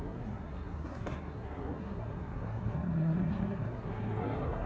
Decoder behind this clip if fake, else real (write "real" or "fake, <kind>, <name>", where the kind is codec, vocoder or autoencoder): fake, codec, SNAC